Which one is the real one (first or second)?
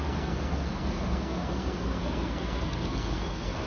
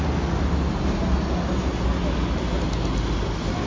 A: second